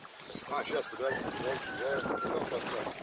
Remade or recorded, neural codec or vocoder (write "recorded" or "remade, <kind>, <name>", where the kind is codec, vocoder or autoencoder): remade, vocoder, BigVGAN v2